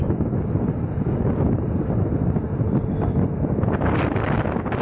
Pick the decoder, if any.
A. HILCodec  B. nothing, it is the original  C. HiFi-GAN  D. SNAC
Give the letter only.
B